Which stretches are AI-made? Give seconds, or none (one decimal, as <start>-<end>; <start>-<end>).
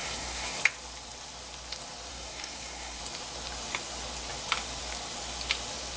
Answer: 0.0-0.6; 2.1-3.0